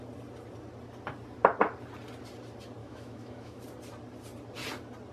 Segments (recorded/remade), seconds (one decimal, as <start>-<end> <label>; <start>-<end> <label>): 0.0-2.8 recorded; 2.8-3.6 remade; 3.6-5.1 recorded